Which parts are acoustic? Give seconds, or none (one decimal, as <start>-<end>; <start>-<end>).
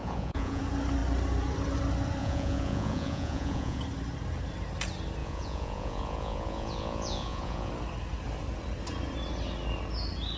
0.6-2.2; 3.8-5.2; 7.7-10.4